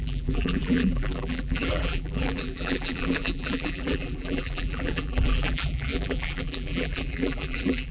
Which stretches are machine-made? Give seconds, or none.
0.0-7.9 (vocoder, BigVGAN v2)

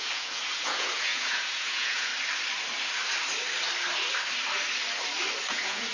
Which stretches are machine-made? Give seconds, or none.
0.0-2.1 (vocoder, Vocos); 5.5-5.9

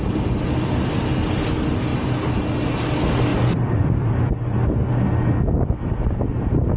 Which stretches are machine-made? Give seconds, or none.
1.9-2.6 (vocoder, BigVGAN v2); 3.3-4.9

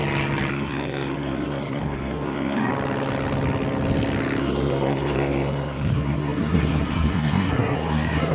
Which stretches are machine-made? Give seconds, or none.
0.5-2.7 (codec, SNAC); 4.4-8.3

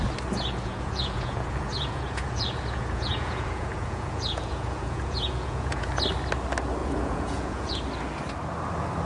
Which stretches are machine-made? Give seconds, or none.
0.6-5.9 (vocoder, Vocos); 6.8-7.8

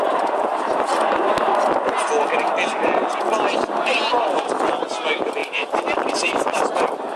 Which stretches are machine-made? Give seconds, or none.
5.4-6.6 (vocoder, BigVGAN v2)

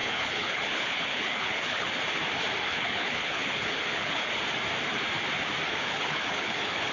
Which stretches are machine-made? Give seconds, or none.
0.0-1.9 (codec, HILCodec); 2.6-4.4; 5.7-6.9

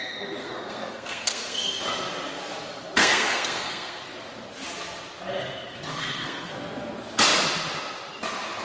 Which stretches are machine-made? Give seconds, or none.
0.4-1.8 (codec, SNAC); 3.0-4.0; 5.9-6.5